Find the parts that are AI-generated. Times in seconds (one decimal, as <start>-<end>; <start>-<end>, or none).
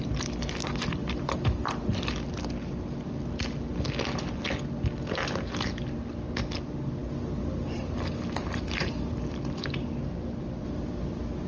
none